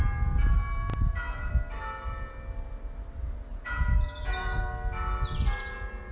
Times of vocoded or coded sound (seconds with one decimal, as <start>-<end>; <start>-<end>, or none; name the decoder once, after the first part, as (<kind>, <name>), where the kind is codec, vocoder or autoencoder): 0.9-1.5 (vocoder, Vocos); 3.5-4.6